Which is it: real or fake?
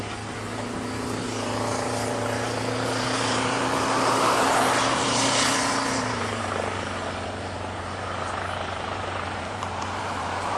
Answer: fake